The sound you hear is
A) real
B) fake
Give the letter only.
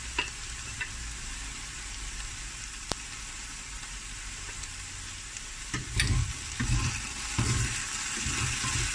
B